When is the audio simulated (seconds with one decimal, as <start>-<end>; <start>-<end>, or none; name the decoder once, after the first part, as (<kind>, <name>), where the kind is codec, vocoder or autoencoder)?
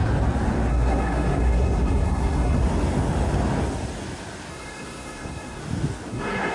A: 0.7-2.6 (codec, SNAC); 4.5-5.6; 6.1-6.5